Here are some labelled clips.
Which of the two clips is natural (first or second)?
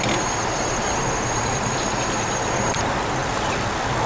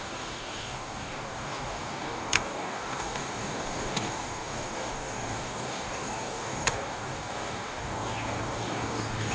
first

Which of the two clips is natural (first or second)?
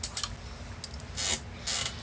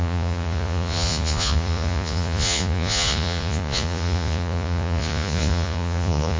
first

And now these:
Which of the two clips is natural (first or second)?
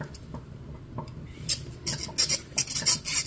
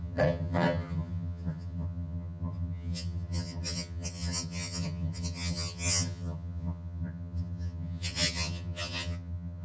first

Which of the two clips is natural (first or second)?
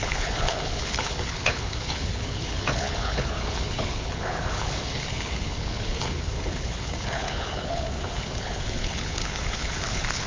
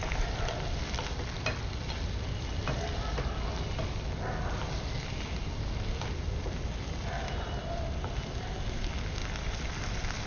second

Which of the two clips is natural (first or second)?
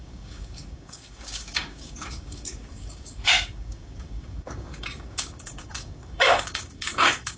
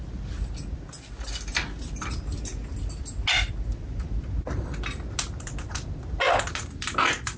second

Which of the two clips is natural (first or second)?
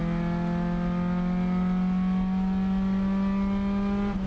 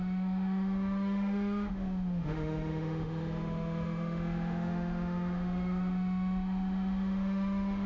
first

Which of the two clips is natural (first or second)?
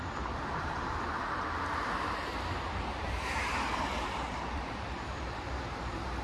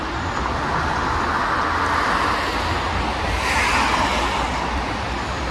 second